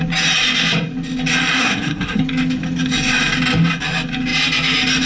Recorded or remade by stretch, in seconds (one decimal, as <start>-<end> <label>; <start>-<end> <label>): 0.0-1.6 recorded; 1.6-2.2 remade; 2.2-5.1 recorded